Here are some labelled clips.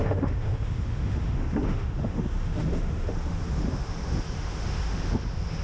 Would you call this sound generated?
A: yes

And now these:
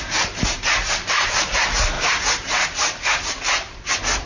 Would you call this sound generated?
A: yes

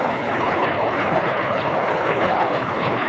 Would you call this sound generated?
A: yes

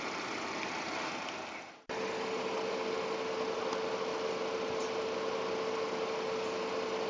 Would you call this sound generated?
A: no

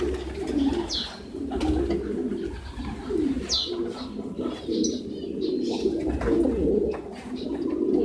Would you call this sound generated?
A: no